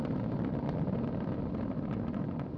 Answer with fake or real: fake